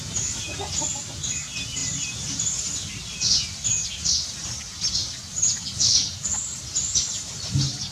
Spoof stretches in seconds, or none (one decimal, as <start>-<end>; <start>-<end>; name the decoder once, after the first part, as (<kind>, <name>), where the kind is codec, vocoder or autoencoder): none